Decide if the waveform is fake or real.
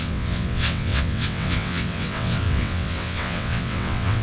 fake